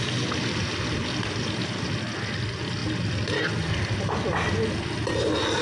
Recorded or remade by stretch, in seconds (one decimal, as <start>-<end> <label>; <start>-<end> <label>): 0.0-5.6 recorded

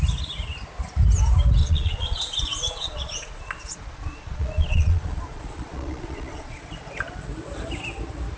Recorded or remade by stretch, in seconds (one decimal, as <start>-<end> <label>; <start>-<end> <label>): 0.0-1.6 recorded; 1.6-6.6 remade; 6.6-8.4 recorded

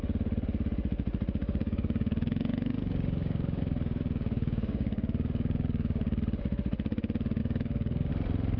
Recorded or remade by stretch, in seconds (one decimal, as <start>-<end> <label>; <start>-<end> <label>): 0.0-1.4 recorded; 1.4-6.2 remade; 6.2-7.4 recorded; 7.4-8.1 remade; 8.1-8.6 recorded

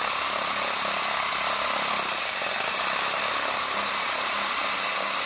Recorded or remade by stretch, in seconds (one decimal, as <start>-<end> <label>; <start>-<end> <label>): 0.0-5.3 recorded

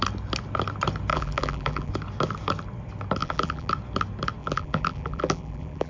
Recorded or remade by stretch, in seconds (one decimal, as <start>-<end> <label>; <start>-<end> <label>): 0.0-1.1 recorded; 1.1-1.9 remade; 1.9-3.2 recorded; 3.2-3.7 remade; 3.7-4.4 recorded; 4.4-5.9 remade